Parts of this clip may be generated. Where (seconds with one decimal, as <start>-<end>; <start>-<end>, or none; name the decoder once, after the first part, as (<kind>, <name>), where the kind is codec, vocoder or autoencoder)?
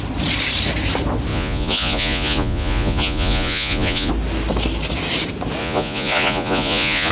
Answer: 1.3-4.1 (vocoder, Vocos); 5.6-7.1